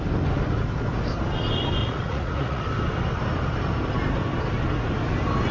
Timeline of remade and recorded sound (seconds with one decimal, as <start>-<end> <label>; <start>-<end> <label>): 0.0-1.8 recorded; 1.8-2.6 remade; 2.6-5.5 recorded